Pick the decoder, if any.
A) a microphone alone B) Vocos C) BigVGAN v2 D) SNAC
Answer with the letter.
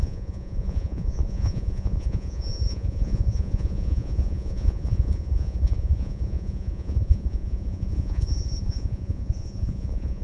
B